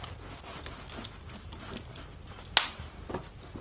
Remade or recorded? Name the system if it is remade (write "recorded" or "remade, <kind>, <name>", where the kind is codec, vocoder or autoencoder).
recorded